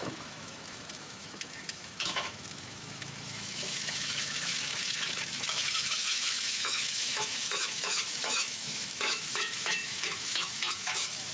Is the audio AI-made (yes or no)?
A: yes